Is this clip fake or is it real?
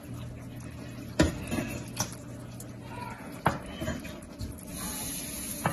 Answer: real